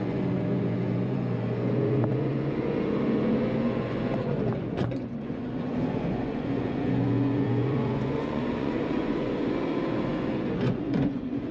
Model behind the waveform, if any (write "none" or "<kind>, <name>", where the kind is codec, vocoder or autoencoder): vocoder, Vocos